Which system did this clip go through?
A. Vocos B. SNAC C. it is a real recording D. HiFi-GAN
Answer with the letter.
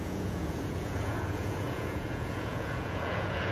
A